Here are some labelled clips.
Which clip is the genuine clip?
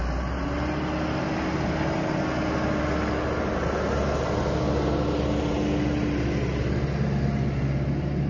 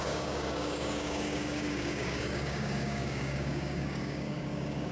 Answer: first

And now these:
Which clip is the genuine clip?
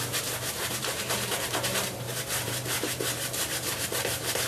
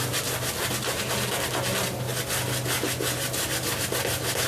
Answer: second